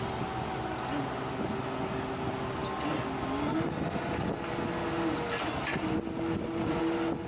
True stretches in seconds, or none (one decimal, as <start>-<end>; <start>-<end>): 0.0-7.3